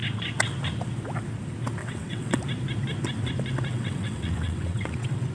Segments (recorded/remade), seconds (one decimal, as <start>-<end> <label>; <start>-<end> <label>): 0.0-1.8 recorded; 1.8-2.4 remade; 2.4-3.7 recorded; 3.7-5.3 remade